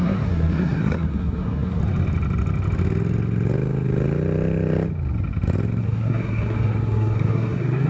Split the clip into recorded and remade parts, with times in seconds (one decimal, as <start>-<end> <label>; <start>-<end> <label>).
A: 0.0-1.8 remade; 1.8-5.8 recorded; 5.8-7.9 remade